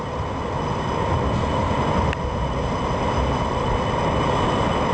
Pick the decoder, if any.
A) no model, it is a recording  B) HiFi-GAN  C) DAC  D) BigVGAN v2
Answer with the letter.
A